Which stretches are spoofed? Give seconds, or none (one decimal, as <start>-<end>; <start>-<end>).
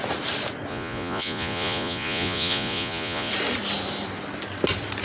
0.7-3.3